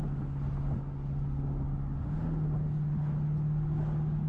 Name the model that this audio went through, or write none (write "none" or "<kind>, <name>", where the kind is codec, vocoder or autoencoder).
none